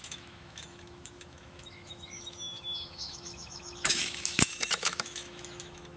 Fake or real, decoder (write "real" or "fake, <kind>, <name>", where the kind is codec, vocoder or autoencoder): fake, autoencoder, DAC-VAE